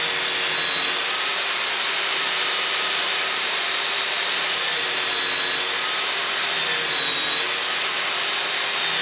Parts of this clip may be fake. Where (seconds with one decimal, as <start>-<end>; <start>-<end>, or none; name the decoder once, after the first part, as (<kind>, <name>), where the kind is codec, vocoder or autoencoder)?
1.0-5.1 (vocoder, BigVGAN v2)